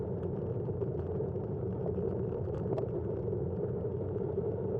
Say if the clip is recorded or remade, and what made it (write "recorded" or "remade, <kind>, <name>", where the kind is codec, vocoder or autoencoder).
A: remade, vocoder, BigVGAN v2